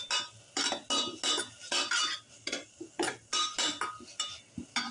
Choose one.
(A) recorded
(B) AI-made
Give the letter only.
A